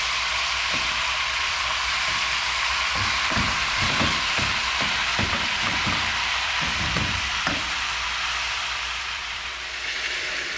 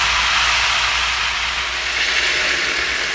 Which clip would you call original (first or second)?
second